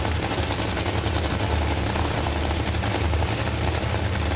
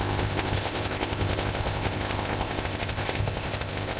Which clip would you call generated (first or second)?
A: second